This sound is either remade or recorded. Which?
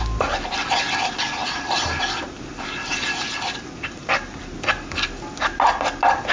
recorded